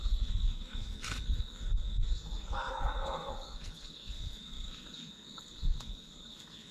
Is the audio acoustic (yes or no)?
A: no